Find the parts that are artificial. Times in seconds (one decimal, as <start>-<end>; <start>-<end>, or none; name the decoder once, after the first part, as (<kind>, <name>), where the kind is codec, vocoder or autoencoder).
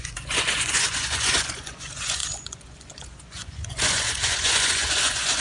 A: 0.0-5.4 (vocoder, Vocos)